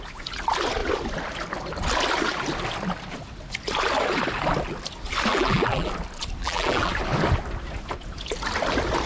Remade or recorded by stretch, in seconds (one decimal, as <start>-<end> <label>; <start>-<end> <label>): 0.0-5.3 recorded; 5.3-5.9 remade; 5.9-6.4 recorded; 6.4-6.9 remade; 6.9-9.1 recorded